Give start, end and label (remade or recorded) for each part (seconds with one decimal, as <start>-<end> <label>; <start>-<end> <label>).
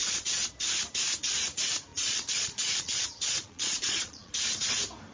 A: 0.0-0.5 remade; 0.5-1.9 recorded; 1.9-4.3 remade; 4.3-5.1 recorded